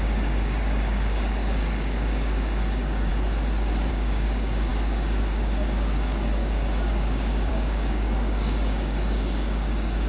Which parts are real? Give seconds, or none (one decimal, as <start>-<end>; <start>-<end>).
3.1-3.9